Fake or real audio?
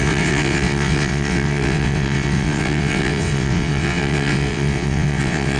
fake